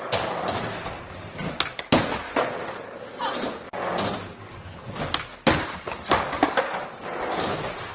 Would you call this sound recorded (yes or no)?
yes